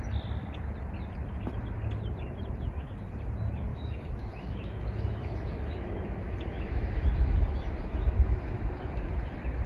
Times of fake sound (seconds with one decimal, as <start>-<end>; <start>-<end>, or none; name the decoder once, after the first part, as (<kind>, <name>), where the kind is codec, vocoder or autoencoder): 3.7-8.9 (autoencoder, DAC-VAE)